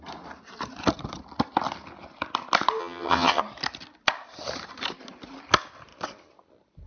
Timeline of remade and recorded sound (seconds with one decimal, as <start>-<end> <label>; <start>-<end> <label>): 0.0-2.8 recorded; 2.8-3.4 remade; 3.4-6.9 recorded